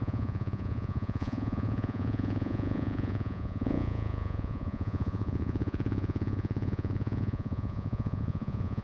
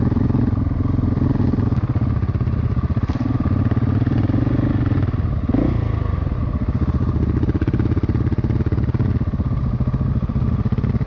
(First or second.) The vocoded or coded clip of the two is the first